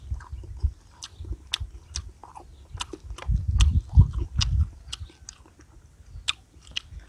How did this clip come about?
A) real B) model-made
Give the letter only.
A